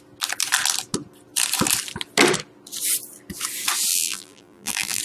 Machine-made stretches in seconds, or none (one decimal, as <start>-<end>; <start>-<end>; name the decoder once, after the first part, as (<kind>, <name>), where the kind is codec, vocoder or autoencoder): 3.9-5.0 (vocoder, BigVGAN v2)